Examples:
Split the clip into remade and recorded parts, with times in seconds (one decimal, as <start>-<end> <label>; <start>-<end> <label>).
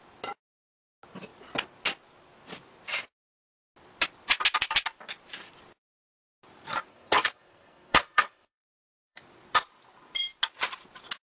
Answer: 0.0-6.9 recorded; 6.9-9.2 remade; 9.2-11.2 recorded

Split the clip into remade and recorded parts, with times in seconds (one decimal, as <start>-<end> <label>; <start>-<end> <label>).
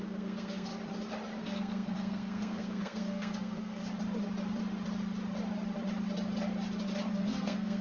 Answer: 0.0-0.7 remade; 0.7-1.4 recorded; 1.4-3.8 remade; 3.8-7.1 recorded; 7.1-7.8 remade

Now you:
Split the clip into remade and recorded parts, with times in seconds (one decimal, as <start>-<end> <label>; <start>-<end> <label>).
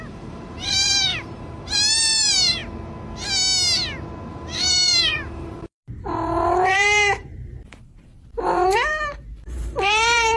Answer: 0.0-2.6 remade; 2.6-4.3 recorded; 4.3-10.4 remade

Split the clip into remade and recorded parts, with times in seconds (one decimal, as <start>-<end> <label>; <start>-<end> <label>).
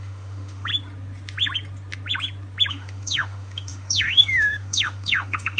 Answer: 0.0-0.7 remade; 0.7-2.7 recorded; 2.7-5.6 remade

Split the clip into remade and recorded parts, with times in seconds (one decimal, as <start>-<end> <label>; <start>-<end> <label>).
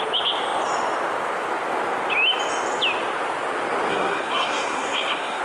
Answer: 0.0-3.9 recorded; 3.9-5.4 remade